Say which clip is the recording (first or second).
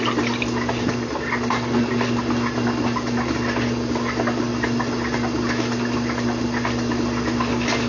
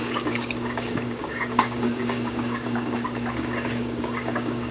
first